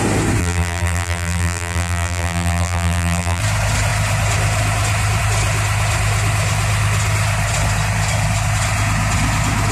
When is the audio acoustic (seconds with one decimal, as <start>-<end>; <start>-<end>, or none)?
0.0-0.4; 3.4-9.7